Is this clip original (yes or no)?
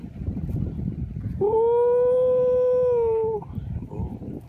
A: yes